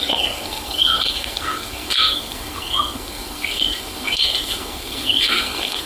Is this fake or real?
fake